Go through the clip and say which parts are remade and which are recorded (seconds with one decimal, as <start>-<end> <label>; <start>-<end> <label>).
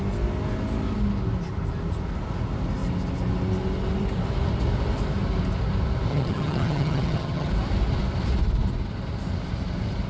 0.0-6.1 recorded; 6.1-7.5 remade; 7.5-10.1 recorded